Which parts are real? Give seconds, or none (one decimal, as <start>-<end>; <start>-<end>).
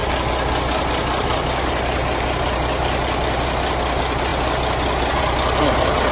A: 0.0-6.1